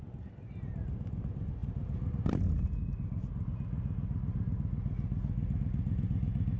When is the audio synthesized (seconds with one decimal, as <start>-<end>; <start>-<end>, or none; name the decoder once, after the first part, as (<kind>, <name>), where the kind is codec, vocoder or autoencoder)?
none